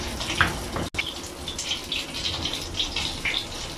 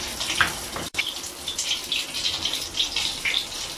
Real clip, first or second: first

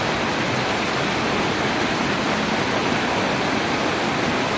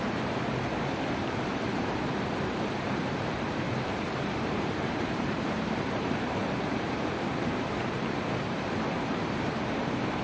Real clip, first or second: first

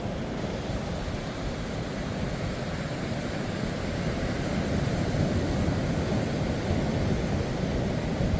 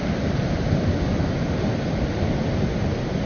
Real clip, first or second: second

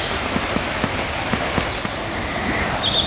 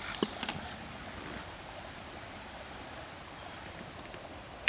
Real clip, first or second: first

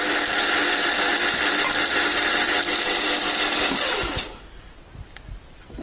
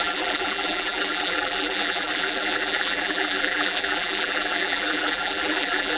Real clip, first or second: first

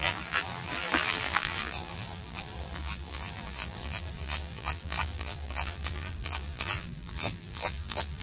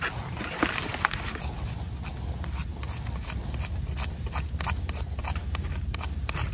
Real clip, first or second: second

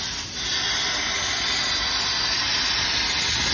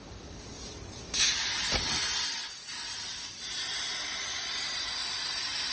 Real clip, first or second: first